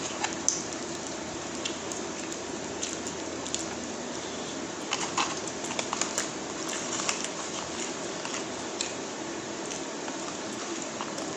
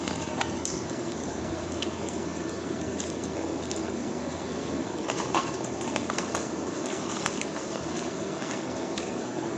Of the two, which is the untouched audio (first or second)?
first